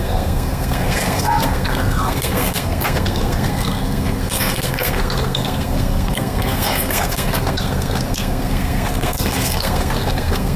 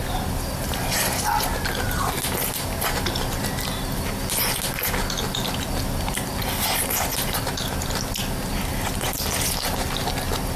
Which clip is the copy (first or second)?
first